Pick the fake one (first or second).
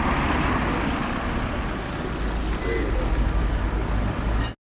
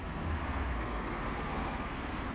second